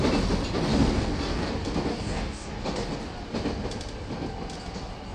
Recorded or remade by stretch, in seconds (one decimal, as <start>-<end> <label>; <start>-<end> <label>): 0.0-0.7 recorded; 0.7-1.5 remade; 1.5-1.9 recorded; 1.9-2.9 remade; 2.9-5.1 recorded